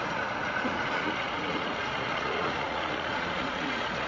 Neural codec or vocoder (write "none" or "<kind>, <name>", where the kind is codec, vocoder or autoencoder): vocoder, Vocos